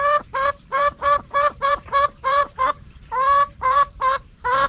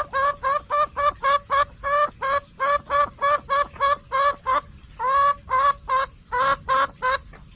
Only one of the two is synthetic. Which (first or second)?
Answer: first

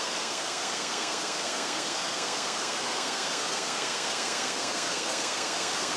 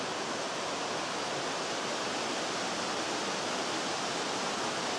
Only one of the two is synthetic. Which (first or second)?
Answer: first